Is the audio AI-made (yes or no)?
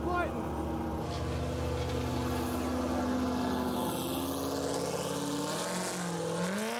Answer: no